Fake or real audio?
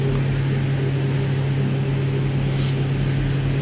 real